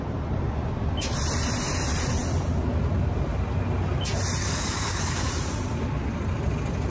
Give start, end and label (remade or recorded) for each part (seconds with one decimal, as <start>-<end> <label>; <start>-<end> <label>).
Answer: 0.0-4.4 recorded; 4.4-5.3 remade; 5.3-6.9 recorded